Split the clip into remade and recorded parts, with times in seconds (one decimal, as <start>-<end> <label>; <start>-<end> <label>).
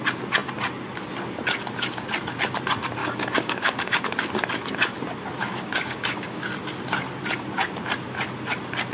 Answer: 0.0-3.0 recorded; 3.0-4.0 remade; 4.0-5.4 recorded; 5.4-6.5 remade; 6.5-8.9 recorded